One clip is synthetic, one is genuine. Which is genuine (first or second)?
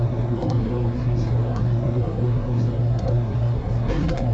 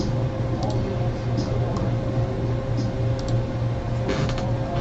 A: second